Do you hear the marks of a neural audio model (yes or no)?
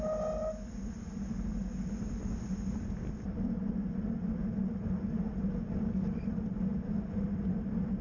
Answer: no